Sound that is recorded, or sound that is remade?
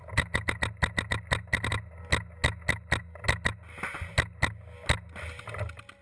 recorded